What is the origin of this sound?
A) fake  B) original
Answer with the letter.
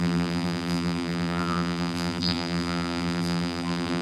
A